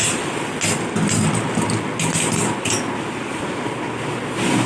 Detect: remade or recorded recorded